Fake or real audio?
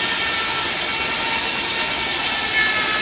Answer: real